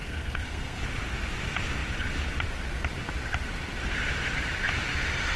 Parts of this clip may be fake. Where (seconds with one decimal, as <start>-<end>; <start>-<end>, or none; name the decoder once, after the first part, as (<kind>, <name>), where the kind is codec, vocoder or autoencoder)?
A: 0.0-0.8 (codec, SNAC)